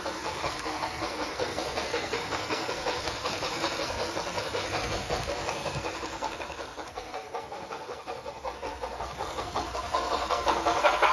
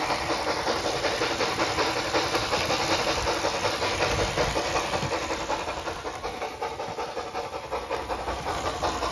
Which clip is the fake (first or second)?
first